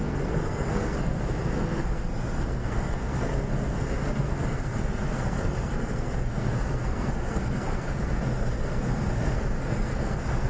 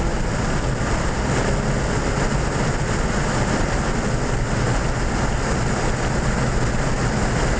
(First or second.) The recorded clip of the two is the second